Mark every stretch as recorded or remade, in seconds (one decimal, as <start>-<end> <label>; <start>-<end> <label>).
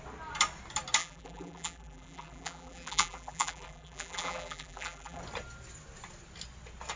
0.0-1.0 recorded; 1.0-5.2 remade; 5.2-7.0 recorded